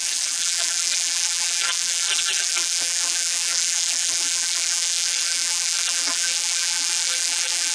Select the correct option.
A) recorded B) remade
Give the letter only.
B